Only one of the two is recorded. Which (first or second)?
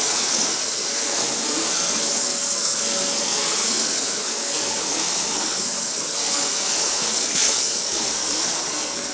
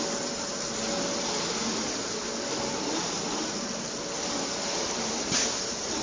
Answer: second